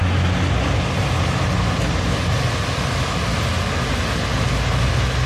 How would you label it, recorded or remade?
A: recorded